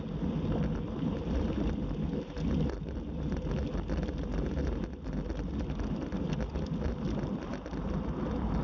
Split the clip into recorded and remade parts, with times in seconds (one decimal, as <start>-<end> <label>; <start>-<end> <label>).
0.0-8.6 recorded